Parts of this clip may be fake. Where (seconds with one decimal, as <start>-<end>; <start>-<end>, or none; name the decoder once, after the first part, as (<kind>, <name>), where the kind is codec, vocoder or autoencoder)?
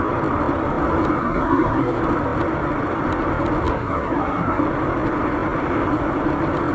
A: 1.2-2.0 (codec, SNAC); 3.7-4.6